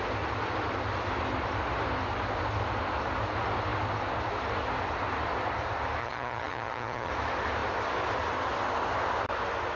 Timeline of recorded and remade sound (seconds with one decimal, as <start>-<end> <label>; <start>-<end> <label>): 0.0-6.0 recorded; 6.0-7.1 remade; 7.1-9.8 recorded

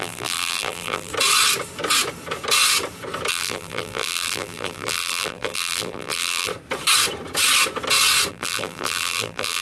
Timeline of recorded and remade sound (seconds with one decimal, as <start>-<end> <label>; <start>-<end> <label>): 0.0-1.1 remade; 1.1-3.3 recorded; 3.3-6.5 remade; 6.5-8.3 recorded; 8.3-9.6 remade

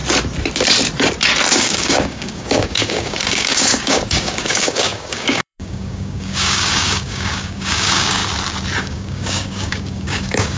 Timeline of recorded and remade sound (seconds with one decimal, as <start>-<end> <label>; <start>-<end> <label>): 0.0-1.6 recorded; 1.6-8.2 remade; 8.2-8.8 recorded; 8.8-10.6 remade

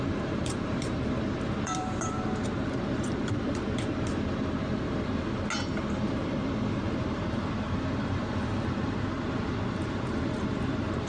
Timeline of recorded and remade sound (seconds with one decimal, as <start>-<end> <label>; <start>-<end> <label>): 0.0-4.3 remade; 4.3-6.3 recorded; 6.3-11.1 remade

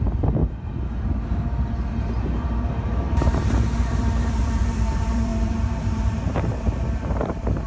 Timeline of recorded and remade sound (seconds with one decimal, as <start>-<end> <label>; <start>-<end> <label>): 0.0-0.4 remade; 0.4-2.0 recorded; 2.0-7.7 remade

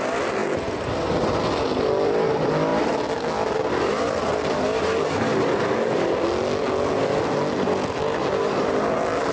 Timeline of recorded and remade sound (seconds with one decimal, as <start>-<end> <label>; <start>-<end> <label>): 0.0-9.3 recorded

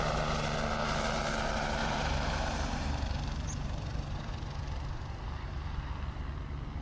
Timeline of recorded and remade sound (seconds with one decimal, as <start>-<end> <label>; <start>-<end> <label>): 0.0-0.8 recorded; 0.8-1.3 remade; 1.3-1.8 recorded; 1.8-4.3 remade; 4.3-6.8 recorded

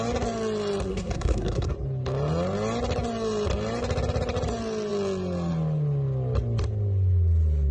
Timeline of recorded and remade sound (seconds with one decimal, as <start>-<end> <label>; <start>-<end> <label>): 0.0-0.9 recorded; 0.9-1.7 remade; 1.7-7.7 recorded